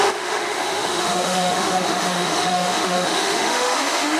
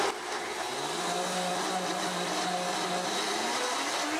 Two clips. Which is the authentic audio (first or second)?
second